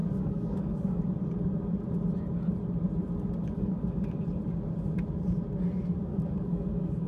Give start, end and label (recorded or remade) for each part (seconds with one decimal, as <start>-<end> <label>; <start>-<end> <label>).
0.0-1.0 remade; 1.0-3.4 recorded; 3.4-4.0 remade; 4.0-6.1 recorded; 6.1-7.1 remade